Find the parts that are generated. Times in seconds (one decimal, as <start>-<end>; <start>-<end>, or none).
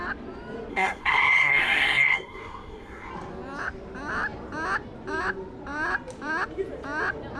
0.7-3.1